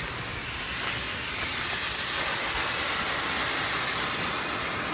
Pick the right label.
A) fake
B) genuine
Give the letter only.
B